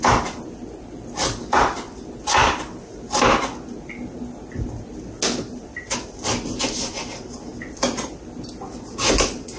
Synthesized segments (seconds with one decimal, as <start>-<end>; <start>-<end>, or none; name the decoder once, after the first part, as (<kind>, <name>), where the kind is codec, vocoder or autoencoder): none